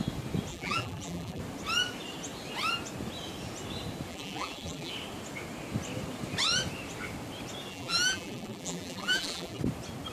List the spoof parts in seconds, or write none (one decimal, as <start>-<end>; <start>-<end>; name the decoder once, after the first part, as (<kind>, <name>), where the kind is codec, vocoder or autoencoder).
0.5-1.4 (vocoder, BigVGAN v2); 4.1-4.9; 7.7-9.6